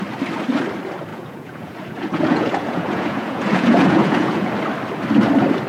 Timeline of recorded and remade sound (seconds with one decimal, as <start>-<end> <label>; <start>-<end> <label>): 0.0-1.1 recorded; 1.1-4.5 remade; 4.5-5.7 recorded